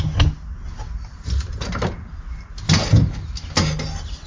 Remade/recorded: recorded